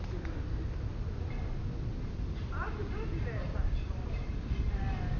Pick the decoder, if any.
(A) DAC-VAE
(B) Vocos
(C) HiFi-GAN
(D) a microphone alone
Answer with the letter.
D